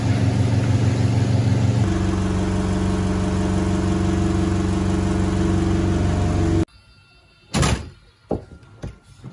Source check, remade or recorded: recorded